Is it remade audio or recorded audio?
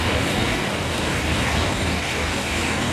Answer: remade